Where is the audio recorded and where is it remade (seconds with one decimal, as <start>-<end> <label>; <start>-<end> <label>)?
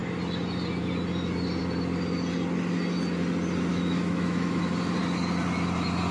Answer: 0.0-3.7 recorded; 3.7-4.6 remade; 4.6-6.1 recorded